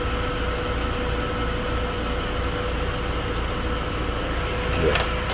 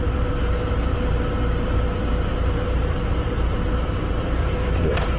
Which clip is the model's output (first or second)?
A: second